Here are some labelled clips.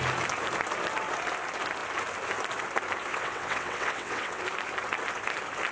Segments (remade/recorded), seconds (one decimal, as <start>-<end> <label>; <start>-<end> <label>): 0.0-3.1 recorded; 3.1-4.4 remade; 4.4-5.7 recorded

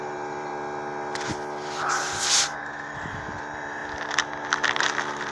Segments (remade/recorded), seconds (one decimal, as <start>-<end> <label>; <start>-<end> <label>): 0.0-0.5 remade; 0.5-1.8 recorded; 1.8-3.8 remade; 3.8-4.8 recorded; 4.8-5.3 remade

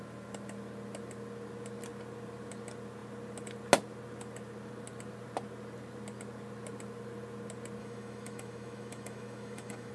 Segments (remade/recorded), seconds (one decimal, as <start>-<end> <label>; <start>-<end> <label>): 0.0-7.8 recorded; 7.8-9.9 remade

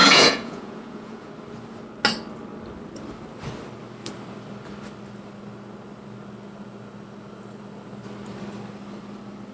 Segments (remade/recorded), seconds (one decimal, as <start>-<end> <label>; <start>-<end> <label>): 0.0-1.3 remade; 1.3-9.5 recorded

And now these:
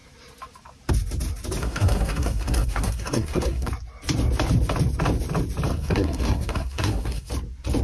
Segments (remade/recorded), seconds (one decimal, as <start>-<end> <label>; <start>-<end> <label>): 0.0-1.6 recorded; 1.6-3.7 remade; 3.7-5.7 recorded; 5.7-7.3 remade; 7.3-7.8 recorded

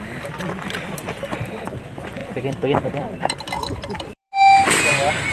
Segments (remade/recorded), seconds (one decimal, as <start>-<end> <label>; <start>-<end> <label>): 0.0-2.2 recorded; 2.2-4.3 remade; 4.3-5.3 recorded

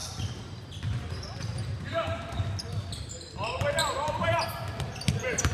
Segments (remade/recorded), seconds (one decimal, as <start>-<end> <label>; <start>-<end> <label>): 0.0-3.3 remade; 3.3-3.8 recorded; 3.8-4.6 remade; 4.6-5.5 recorded